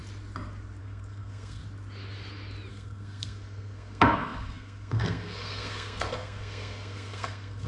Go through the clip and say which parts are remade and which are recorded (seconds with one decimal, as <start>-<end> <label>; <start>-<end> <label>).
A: 0.0-0.8 recorded; 0.8-1.6 remade; 1.6-2.7 recorded; 2.7-7.7 remade

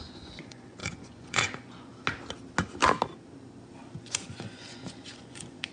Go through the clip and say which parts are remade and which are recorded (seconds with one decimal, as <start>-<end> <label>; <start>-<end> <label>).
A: 0.0-1.9 remade; 1.9-4.0 recorded; 4.0-5.7 remade

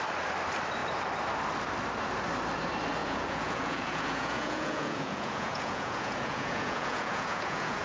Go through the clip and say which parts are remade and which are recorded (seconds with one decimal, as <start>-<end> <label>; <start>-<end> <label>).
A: 0.0-3.0 recorded; 3.0-7.8 remade

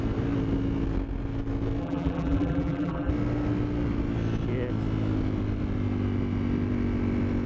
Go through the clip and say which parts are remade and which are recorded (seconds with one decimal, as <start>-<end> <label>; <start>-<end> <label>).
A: 0.0-1.8 recorded; 1.8-3.1 remade; 3.1-7.5 recorded

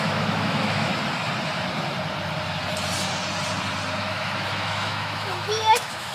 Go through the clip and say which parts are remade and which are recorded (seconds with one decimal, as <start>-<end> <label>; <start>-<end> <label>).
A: 0.0-0.9 remade; 0.9-4.0 recorded; 4.0-6.1 remade

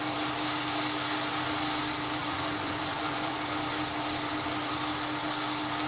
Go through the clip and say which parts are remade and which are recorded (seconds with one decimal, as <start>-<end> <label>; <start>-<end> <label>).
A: 0.0-2.2 recorded; 2.2-3.4 remade; 3.4-5.9 recorded

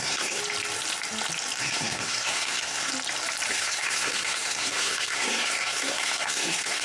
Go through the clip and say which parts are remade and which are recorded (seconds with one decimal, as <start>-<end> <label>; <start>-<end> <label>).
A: 0.0-0.4 remade; 0.4-1.6 recorded; 1.6-2.9 remade; 2.9-3.5 recorded; 3.5-6.8 remade

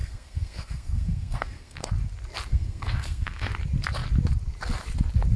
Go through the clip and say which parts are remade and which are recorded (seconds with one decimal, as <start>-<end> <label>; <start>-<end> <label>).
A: 0.0-1.9 remade; 1.9-2.5 recorded; 2.5-3.5 remade; 3.5-5.4 recorded